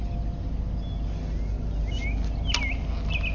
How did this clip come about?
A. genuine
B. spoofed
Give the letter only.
A